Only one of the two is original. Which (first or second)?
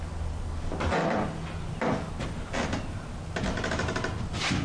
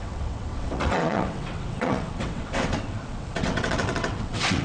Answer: first